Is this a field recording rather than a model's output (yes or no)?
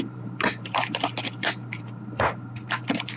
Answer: no